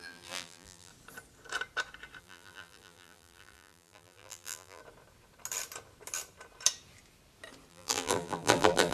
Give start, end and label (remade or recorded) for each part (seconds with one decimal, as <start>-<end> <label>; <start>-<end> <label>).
0.0-0.9 remade; 0.9-2.2 recorded; 2.2-4.8 remade; 4.8-7.7 recorded; 7.7-8.9 remade